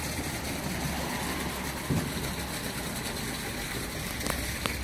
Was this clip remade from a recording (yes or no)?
no